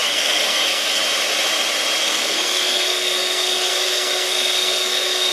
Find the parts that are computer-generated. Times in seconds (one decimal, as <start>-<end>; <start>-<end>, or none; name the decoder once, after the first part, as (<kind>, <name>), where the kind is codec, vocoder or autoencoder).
0.0-1.0 (codec, SNAC); 2.0-5.3